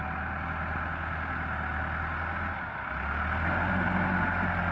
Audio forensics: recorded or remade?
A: recorded